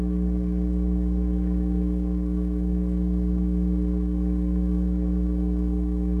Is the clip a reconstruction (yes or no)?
yes